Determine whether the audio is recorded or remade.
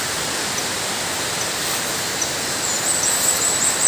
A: recorded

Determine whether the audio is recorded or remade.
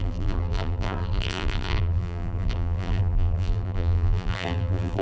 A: remade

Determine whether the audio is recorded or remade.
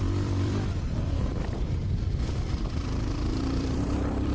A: remade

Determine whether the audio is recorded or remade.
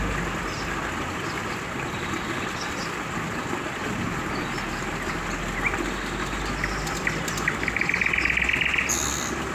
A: recorded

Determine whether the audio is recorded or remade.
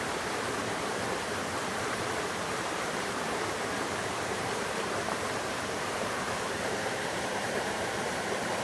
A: remade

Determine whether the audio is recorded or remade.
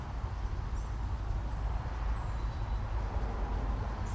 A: recorded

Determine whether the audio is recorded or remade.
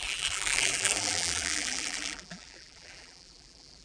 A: remade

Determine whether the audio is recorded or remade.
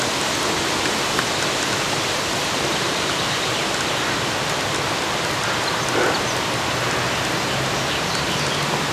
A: recorded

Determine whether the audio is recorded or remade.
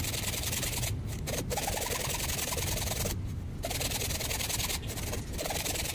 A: recorded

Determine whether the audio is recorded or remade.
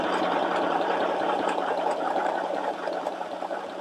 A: remade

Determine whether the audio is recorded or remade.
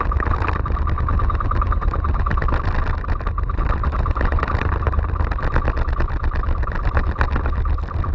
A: remade